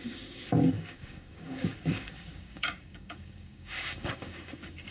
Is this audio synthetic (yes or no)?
yes